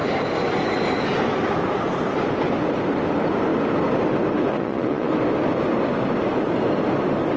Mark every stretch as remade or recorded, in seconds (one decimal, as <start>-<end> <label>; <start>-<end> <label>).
0.0-4.5 recorded; 4.5-5.1 remade; 5.1-7.4 recorded